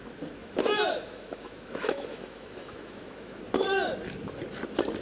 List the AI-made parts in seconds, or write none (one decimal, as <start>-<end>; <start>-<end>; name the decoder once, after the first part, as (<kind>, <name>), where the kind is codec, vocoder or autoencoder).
0.4-3.4 (autoencoder, DAC-VAE)